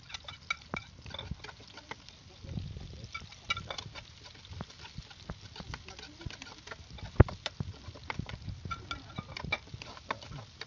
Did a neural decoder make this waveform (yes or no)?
no